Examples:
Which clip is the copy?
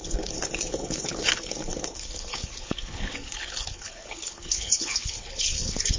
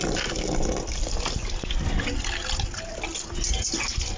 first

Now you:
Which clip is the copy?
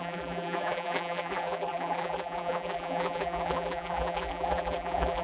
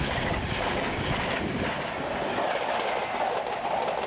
first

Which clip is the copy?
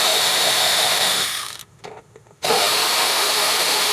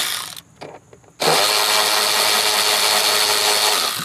first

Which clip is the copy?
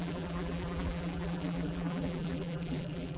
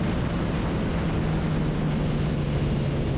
first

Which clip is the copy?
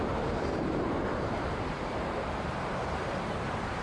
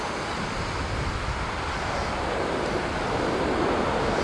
first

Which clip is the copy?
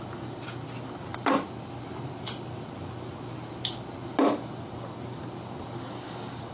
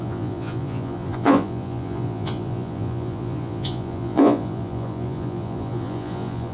second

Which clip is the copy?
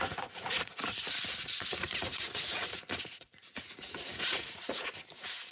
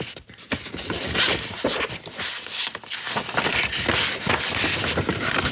first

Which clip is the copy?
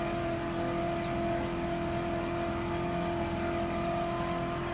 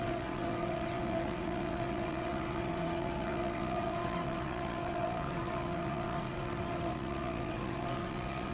second